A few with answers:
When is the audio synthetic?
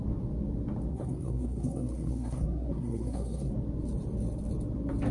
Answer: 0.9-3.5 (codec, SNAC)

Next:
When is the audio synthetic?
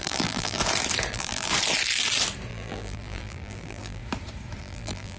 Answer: 0.0-0.6 (vocoder, BigVGAN v2); 1.1-1.5; 2.5-4.0; 4.6-5.2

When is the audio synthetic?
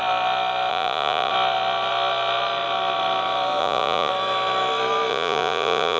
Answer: 0.7-1.3 (vocoder, Vocos); 3.6-4.1; 5.1-6.0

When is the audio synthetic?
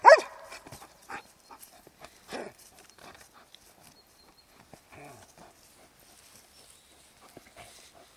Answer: 0.0-1.9 (vocoder, BigVGAN v2)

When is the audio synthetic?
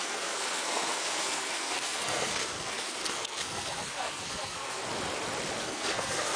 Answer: 0.0-4.8 (codec, SNAC); 5.6-6.4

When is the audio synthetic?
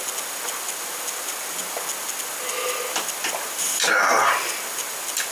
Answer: none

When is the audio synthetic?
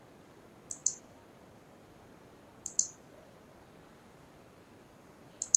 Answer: none